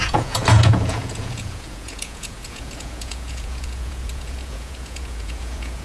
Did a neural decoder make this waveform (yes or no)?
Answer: yes